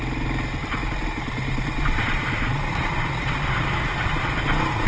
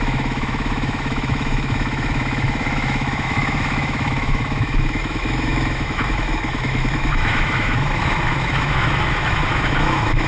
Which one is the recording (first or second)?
first